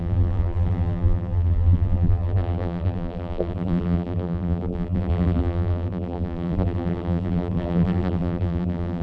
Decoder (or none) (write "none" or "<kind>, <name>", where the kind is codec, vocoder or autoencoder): vocoder, BigVGAN v2